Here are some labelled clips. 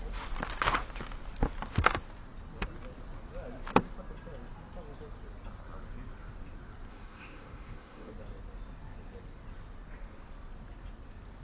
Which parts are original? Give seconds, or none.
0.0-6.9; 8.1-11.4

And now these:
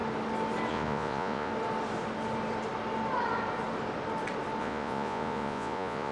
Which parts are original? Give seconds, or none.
0.0-0.7; 1.5-4.6